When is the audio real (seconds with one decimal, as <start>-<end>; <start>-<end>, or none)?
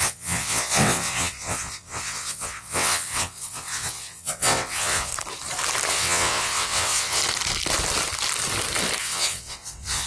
5.1-5.9; 7.2-9.0